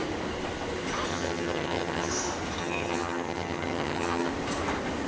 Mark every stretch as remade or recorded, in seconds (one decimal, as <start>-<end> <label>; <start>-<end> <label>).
0.0-1.1 recorded; 1.1-2.1 remade; 2.1-2.6 recorded; 2.6-4.3 remade; 4.3-5.1 recorded